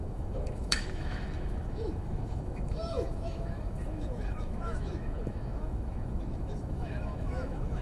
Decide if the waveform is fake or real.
fake